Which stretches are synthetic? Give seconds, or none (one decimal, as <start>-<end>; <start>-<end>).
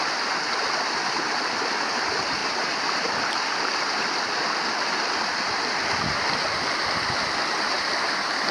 none